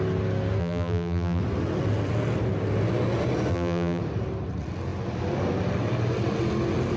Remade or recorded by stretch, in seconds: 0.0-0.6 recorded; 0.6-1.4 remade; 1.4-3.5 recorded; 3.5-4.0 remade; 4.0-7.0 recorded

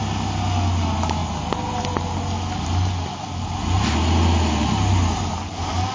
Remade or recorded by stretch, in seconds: 0.0-5.9 recorded